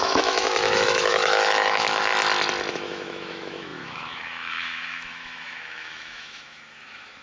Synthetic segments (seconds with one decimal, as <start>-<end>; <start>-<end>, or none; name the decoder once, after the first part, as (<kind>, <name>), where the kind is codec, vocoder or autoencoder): 0.0-2.1 (autoencoder, DAC-VAE); 2.7-7.2